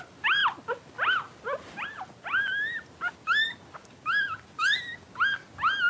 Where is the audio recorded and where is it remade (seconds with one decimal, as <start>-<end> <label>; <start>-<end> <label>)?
0.0-5.9 recorded